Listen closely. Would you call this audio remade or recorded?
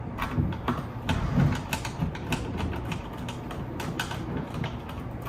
recorded